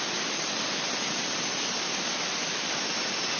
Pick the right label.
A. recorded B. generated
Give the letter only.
A